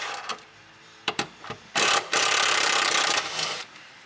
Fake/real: fake